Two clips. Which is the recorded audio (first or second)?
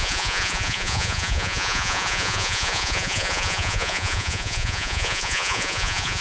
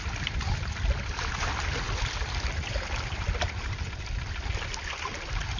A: second